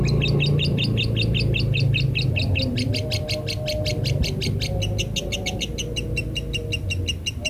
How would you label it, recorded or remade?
recorded